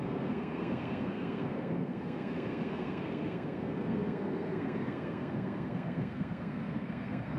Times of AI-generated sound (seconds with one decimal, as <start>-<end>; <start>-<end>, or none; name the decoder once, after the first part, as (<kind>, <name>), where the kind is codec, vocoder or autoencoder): 0.0-7.4 (codec, SNAC)